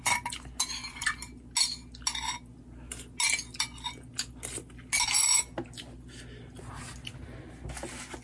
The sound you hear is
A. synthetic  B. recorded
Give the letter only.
B